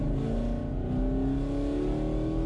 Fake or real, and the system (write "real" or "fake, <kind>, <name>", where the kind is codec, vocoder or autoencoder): real